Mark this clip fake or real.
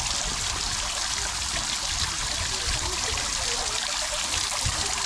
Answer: real